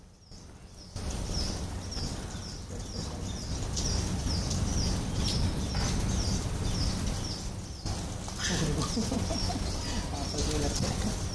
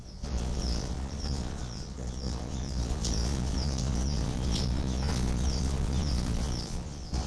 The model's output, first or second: second